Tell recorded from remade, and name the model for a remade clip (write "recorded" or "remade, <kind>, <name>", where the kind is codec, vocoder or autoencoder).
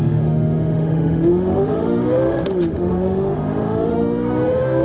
remade, autoencoder, DAC-VAE